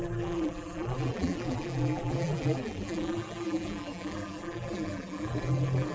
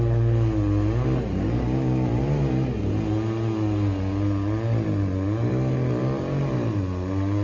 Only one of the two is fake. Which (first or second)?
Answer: first